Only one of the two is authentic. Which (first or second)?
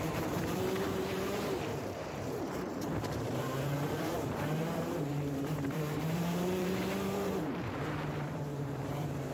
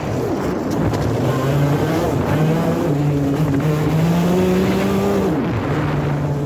second